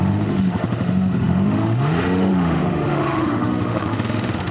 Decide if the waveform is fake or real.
fake